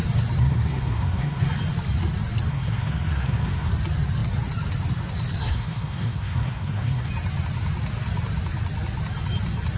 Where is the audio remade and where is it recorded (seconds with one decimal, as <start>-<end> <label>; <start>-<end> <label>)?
0.0-0.4 recorded; 0.4-1.4 remade; 1.4-2.5 recorded; 2.5-3.7 remade; 3.7-5.4 recorded; 5.4-7.1 remade; 7.1-9.8 recorded